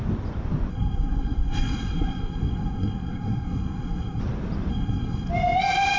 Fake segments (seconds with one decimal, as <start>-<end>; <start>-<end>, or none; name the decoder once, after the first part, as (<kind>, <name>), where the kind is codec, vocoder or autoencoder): 0.7-4.2 (codec, SNAC); 4.7-5.3